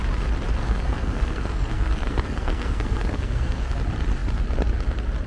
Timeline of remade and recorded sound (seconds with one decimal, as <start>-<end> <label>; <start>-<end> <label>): 0.0-0.6 recorded; 0.6-3.8 remade; 3.8-5.3 recorded